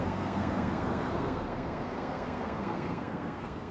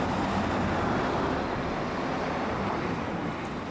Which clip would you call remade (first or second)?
first